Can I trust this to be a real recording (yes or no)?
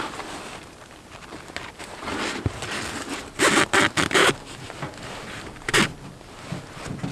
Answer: yes